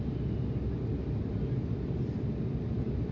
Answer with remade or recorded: recorded